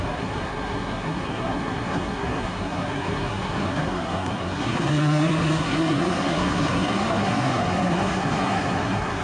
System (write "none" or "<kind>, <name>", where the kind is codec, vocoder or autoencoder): codec, SNAC